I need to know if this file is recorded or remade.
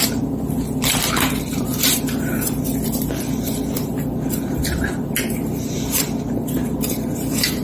remade